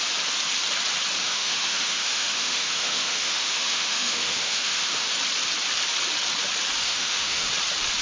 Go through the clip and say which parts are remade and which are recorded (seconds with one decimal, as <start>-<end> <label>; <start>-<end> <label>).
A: 0.0-1.2 recorded; 1.2-5.1 remade; 5.1-6.8 recorded; 6.8-7.5 remade; 7.5-8.0 recorded